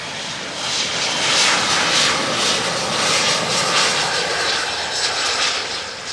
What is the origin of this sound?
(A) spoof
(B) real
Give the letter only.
B